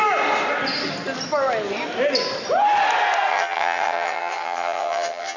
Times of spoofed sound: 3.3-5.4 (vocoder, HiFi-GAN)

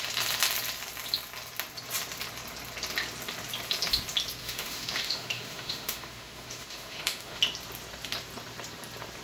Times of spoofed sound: 4.4-7.4 (autoencoder, DAC-VAE)

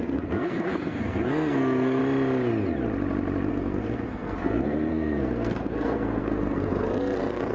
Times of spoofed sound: 0.0-2.0 (codec, SNAC); 3.5-7.5

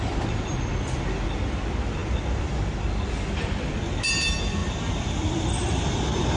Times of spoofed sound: 2.0-3.3 (vocoder, BigVGAN v2); 4.6-5.9

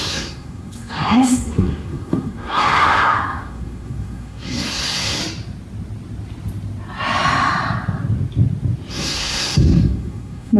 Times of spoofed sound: 0.0-5.2 (codec, SNAC); 8.9-10.6

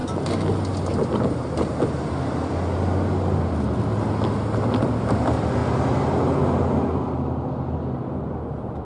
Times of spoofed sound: none

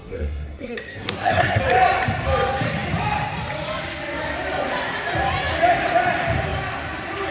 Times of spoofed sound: 0.0-1.6 (codec, SNAC)